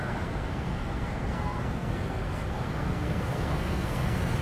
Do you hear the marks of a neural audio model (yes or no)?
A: yes